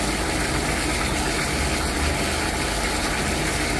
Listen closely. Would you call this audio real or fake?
real